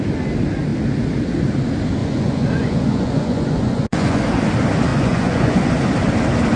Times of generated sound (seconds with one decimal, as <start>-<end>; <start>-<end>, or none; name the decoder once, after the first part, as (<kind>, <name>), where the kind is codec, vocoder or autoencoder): 2.0-4.2 (vocoder, Vocos); 4.9-5.6